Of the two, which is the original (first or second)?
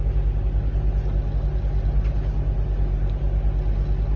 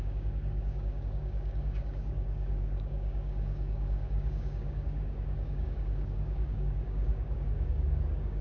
first